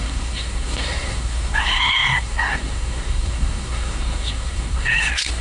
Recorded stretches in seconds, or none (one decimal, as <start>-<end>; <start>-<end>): none